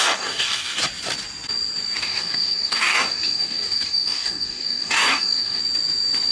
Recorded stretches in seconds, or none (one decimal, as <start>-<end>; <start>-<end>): 0.8-2.0; 5.6-6.3